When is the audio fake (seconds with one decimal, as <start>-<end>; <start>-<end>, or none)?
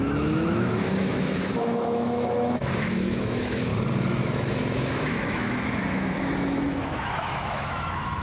0.0-3.7; 4.2-8.2